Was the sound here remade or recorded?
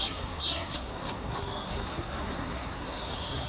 remade